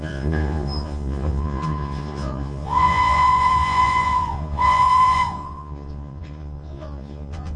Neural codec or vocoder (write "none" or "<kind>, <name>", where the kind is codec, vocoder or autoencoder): vocoder, Vocos